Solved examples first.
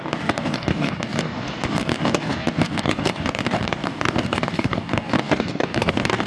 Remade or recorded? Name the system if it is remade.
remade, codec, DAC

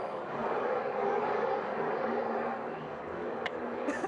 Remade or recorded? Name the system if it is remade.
remade, codec, DAC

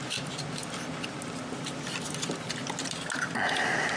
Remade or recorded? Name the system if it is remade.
recorded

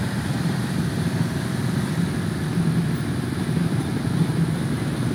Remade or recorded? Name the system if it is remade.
recorded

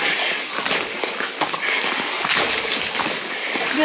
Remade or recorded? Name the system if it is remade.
remade, codec, DAC